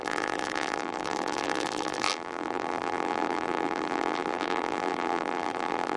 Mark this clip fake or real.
fake